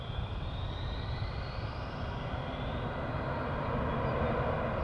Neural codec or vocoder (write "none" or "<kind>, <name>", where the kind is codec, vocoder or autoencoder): none